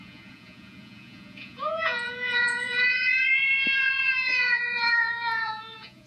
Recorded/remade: remade